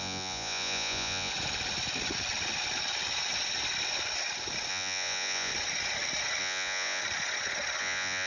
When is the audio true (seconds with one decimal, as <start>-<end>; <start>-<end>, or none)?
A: 1.3-4.7; 5.5-6.4; 7.0-7.8